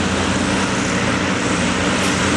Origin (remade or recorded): recorded